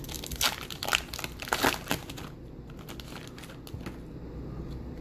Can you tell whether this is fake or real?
real